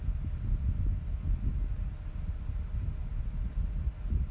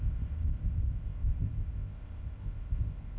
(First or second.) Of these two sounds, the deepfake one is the second